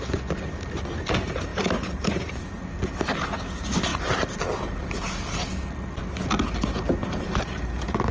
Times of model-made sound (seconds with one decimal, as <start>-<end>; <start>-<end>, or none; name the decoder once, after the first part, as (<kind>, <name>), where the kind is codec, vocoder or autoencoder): 1.5-2.3 (vocoder, BigVGAN v2); 3.9-4.4; 7.0-8.1